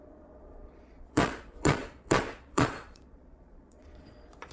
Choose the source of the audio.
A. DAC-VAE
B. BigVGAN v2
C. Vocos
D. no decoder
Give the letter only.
C